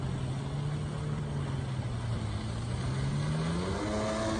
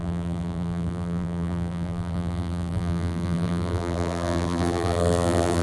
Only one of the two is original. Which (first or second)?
first